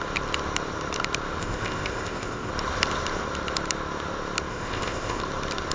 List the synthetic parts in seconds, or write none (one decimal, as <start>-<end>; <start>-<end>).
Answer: 1.4-2.5; 4.5-5.2

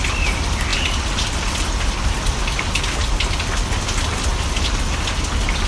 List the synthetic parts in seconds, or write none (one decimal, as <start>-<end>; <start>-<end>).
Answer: none

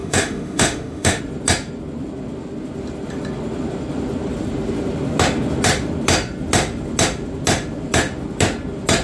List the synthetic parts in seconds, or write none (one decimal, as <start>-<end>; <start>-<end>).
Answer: 0.0-1.2

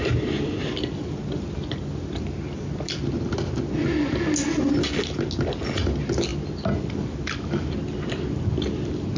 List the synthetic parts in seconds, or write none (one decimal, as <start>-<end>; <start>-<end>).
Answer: none

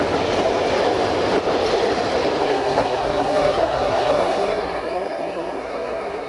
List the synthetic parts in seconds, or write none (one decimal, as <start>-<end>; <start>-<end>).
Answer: 2.4-6.3

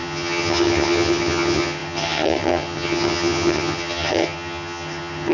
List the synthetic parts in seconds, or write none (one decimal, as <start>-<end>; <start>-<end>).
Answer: 0.0-5.3

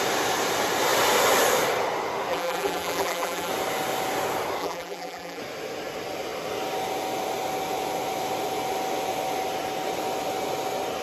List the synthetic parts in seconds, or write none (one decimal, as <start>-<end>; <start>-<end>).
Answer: 2.3-3.5; 4.6-5.4